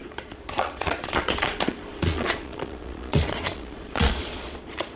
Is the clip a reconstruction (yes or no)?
yes